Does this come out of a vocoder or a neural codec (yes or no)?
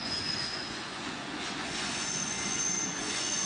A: yes